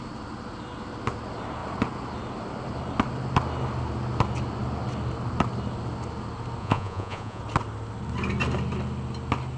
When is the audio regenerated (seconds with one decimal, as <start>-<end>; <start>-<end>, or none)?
6.6-7.4